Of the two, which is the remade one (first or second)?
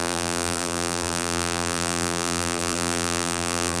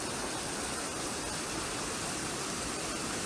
first